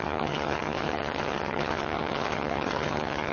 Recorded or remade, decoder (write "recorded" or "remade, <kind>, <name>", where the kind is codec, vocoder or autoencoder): remade, vocoder, HiFi-GAN